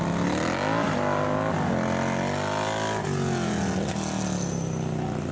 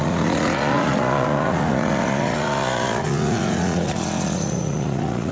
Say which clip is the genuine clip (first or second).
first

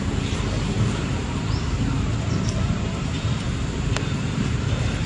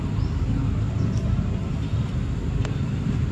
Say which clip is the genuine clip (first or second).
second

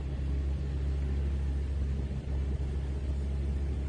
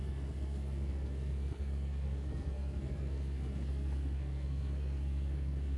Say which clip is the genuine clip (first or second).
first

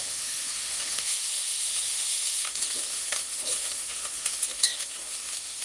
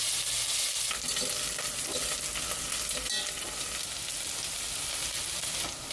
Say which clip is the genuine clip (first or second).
second